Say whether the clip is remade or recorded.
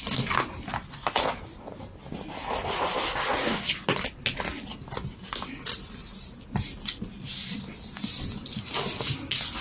recorded